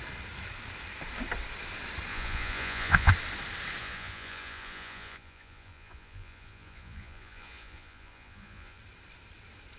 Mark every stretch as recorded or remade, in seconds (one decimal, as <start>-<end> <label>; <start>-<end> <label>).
0.0-2.1 recorded; 2.1-3.1 remade; 3.1-3.8 recorded; 3.8-8.8 remade; 8.8-9.8 recorded